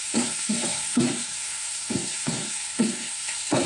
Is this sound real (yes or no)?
no